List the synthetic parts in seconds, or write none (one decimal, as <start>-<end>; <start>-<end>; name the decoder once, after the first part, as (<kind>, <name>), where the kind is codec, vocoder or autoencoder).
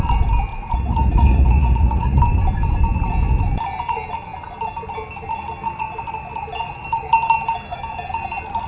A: 0.5-2.2 (vocoder, Vocos)